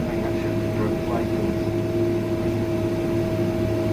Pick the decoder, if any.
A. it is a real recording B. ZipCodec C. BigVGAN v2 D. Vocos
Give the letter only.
A